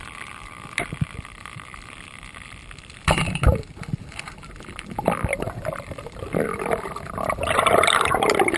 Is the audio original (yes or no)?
no